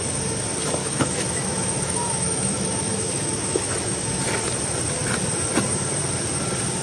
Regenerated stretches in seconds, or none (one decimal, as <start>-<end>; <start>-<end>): 0.8-4.2